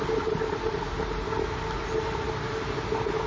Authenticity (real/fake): real